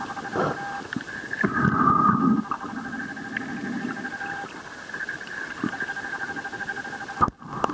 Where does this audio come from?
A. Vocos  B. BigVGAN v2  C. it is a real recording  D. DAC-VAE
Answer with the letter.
C